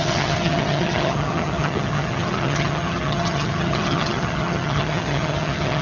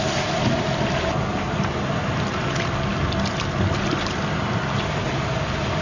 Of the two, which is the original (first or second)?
second